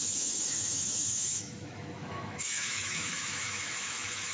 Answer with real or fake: fake